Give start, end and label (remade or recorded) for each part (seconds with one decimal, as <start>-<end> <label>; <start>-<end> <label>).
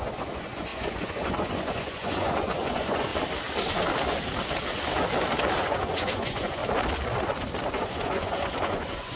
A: 0.0-3.1 remade; 3.1-5.6 recorded; 5.6-6.6 remade; 6.6-7.7 recorded; 7.7-9.2 remade